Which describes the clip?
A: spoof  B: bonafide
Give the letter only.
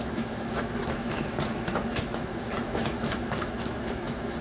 A